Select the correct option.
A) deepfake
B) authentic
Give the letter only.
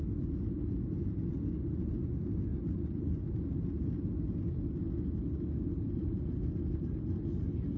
B